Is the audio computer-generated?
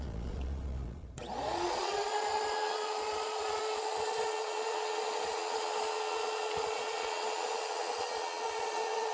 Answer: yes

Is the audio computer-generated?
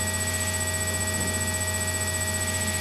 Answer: no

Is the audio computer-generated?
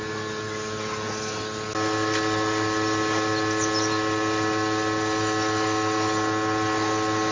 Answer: no